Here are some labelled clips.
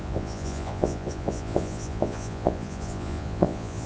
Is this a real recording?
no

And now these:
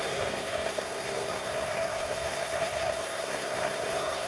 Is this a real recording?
no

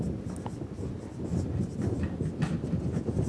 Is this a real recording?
yes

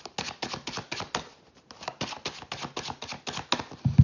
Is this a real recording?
yes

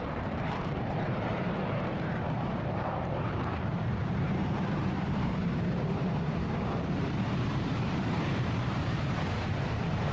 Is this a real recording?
no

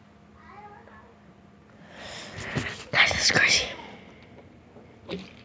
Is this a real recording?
yes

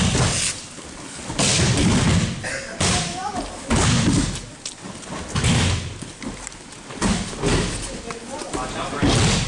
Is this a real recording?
yes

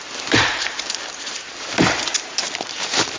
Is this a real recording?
no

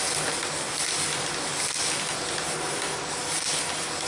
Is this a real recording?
yes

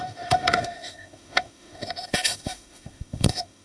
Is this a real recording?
no